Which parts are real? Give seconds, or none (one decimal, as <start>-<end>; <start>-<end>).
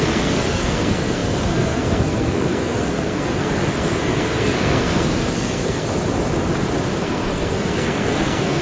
5.9-7.0